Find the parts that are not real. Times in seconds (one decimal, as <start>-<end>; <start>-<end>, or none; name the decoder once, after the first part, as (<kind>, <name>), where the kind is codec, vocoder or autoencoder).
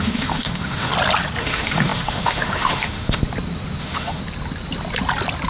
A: 0.0-0.9 (autoencoder, DAC-VAE); 1.4-3.2; 3.8-4.2